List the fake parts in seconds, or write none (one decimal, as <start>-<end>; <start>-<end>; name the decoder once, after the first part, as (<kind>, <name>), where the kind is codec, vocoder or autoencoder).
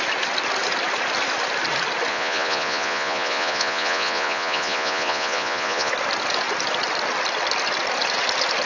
2.1-5.9 (vocoder, Vocos)